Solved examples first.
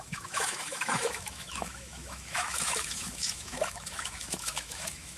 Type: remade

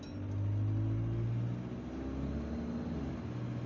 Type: recorded